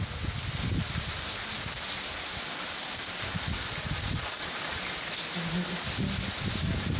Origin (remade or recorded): recorded